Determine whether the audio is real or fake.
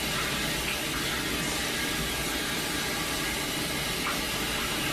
real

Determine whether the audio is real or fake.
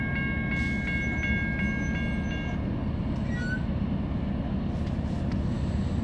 real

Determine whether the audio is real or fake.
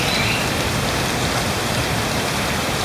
real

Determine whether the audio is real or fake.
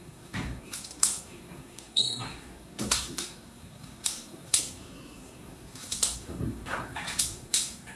fake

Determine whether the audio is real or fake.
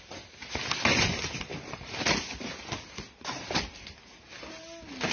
real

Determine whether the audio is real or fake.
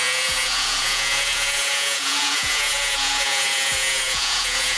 fake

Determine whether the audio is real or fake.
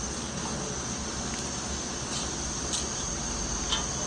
real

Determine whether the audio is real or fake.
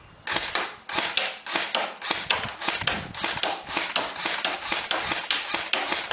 real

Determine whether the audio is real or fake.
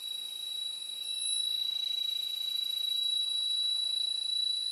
real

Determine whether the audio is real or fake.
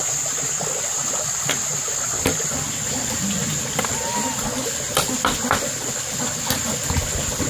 real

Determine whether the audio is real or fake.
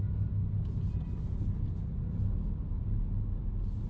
real